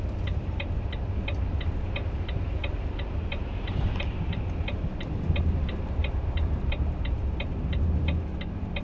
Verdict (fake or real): real